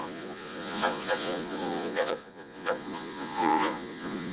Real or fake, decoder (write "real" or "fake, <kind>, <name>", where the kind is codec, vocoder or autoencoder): fake, vocoder, Vocos